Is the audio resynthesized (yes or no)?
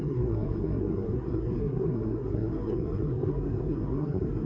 yes